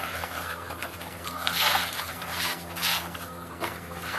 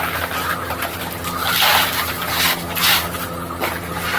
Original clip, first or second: second